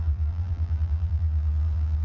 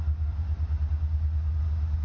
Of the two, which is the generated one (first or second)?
first